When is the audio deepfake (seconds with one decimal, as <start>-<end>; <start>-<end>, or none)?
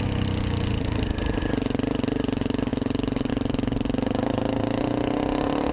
none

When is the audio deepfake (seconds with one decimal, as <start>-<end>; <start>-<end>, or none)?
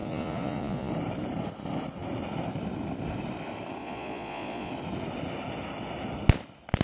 0.0-0.9; 3.8-4.7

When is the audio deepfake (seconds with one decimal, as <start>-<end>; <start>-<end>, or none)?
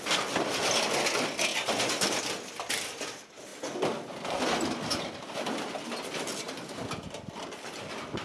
none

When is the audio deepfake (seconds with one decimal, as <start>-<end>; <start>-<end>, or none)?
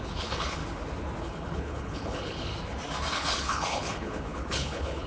0.0-0.6; 1.2-2.5; 3.1-5.1